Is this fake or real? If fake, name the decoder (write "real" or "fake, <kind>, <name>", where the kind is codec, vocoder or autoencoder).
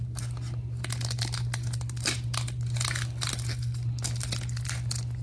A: real